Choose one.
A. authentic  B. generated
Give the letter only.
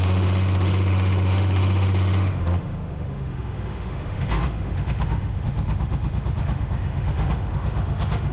B